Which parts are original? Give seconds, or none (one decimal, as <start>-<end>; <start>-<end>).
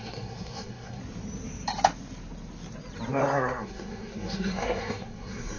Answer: 1.0-3.1